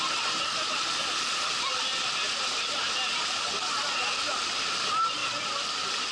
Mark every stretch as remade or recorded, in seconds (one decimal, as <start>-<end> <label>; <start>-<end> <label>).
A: 0.0-6.1 recorded